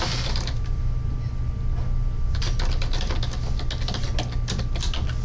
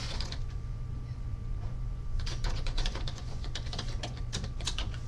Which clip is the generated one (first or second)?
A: second